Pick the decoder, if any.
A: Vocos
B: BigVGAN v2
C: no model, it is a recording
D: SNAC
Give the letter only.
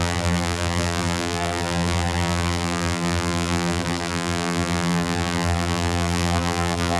B